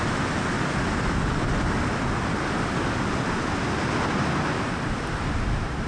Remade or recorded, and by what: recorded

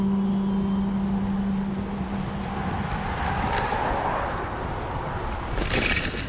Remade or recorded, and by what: recorded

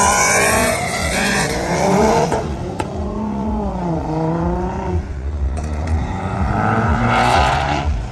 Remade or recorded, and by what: remade, vocoder, Vocos